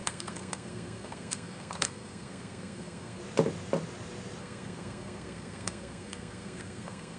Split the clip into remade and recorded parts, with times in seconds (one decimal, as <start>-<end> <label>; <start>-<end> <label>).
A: 0.0-3.2 remade; 3.2-4.4 recorded; 4.4-7.2 remade